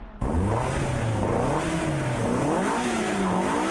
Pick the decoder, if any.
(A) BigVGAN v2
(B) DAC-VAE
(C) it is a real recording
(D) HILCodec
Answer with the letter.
C